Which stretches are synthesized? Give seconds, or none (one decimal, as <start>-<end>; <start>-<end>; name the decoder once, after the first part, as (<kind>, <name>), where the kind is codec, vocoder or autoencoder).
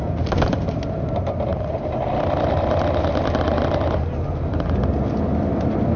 1.5-2.0 (vocoder, BigVGAN v2)